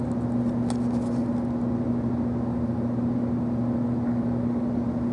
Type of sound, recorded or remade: recorded